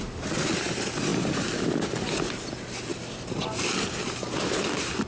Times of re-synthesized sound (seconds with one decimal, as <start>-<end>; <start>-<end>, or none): none